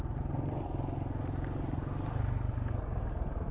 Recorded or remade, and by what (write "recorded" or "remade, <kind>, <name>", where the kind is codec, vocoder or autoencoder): recorded